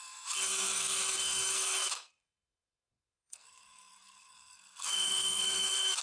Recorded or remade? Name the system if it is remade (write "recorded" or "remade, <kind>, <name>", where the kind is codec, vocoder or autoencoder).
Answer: remade, codec, SNAC